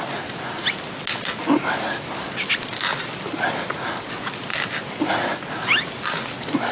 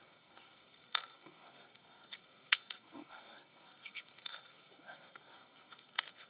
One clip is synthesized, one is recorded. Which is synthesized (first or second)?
second